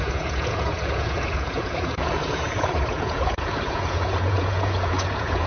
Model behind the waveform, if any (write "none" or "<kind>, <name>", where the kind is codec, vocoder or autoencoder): vocoder, Vocos